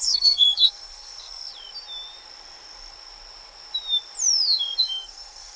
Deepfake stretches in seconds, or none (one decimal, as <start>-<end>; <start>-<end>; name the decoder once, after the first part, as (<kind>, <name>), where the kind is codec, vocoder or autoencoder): 0.0-1.5 (codec, SNAC); 4.8-5.6

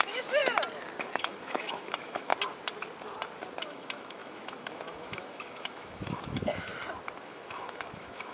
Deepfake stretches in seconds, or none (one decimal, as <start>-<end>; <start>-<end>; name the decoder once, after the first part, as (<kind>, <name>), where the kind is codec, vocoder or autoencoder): 0.0-0.4 (autoencoder, DAC-VAE); 1.0-2.3; 3.6-6.7; 7.2-8.3